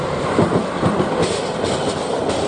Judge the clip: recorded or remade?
recorded